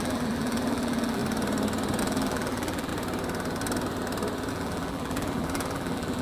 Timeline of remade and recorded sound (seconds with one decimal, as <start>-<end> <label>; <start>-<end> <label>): 0.0-1.2 remade; 1.2-2.0 recorded; 2.0-2.9 remade; 2.9-4.5 recorded; 4.5-6.2 remade